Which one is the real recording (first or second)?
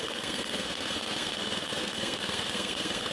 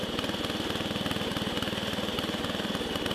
second